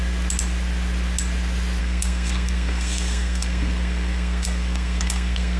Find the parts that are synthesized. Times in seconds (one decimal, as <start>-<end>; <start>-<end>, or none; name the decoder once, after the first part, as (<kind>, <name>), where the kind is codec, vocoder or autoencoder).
1.8-5.6 (codec, SNAC)